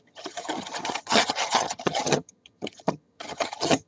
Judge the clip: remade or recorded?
remade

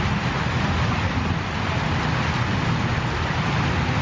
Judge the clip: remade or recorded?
recorded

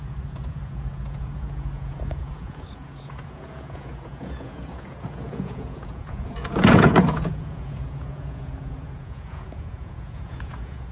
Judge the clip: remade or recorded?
remade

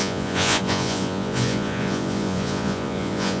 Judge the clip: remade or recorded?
remade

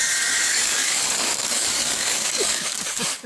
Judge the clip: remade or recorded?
remade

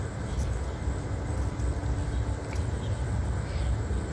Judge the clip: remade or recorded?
recorded